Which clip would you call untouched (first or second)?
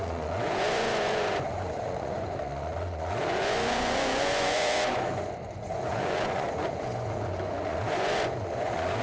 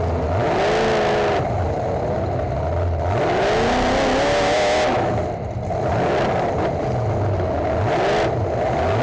second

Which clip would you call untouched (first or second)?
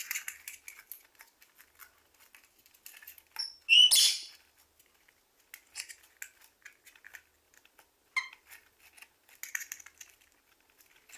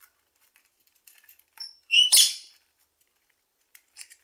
first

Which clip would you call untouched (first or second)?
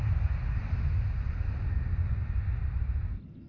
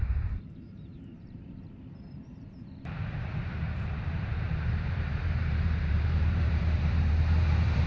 first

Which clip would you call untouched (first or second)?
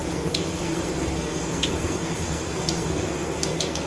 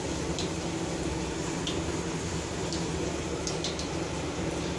second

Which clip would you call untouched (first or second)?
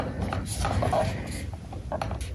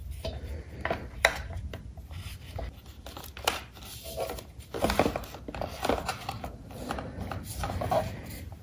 first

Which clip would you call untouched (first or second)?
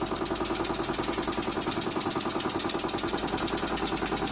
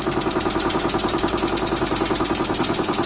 first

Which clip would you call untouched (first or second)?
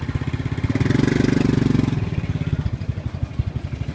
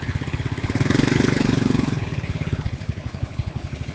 first